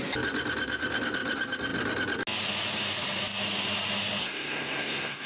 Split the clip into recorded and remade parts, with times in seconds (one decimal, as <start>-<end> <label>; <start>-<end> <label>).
0.0-4.2 recorded; 4.2-5.3 remade